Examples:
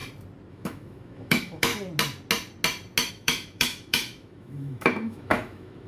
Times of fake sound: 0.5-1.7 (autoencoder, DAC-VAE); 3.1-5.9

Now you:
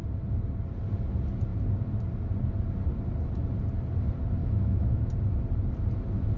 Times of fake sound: 4.4-5.1 (autoencoder, DAC-VAE)

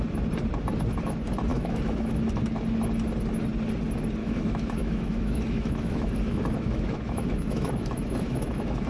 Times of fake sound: 1.5-2.3 (autoencoder, DAC-VAE); 4.2-8.9

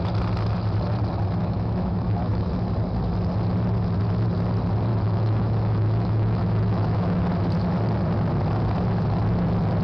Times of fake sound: 1.4-2.6 (autoencoder, DAC-VAE); 4.9-7.2

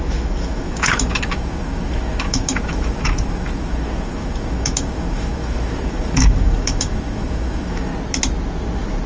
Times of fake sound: 0.0-7.9 (autoencoder, DAC-VAE)

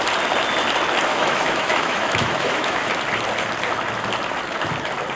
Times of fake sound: 1.1-2.9 (autoencoder, DAC-VAE)

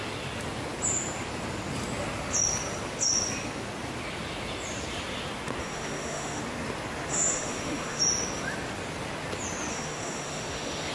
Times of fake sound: 5.6-6.4 (autoencoder, DAC-VAE); 7.1-8.0; 9.7-10.9